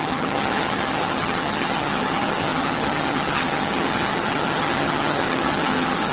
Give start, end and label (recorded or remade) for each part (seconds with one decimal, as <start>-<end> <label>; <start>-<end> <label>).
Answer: 0.0-6.1 remade